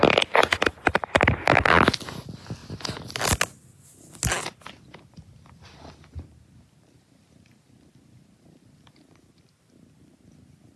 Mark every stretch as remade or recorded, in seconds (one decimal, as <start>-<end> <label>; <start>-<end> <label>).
0.0-10.8 recorded